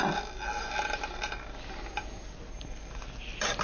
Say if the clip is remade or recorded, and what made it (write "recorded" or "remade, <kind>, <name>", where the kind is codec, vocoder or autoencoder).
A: recorded